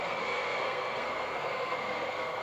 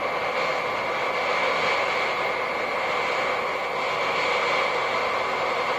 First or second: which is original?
second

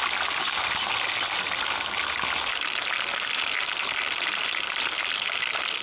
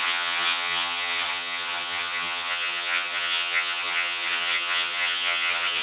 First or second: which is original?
first